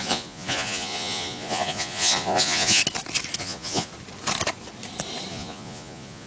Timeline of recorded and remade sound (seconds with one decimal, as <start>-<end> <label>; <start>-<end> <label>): 0.0-2.8 remade; 2.8-3.4 recorded; 3.4-3.9 remade; 3.9-5.3 recorded; 5.3-6.3 remade